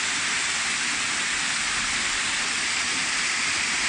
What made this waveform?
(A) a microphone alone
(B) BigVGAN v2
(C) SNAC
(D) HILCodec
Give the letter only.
A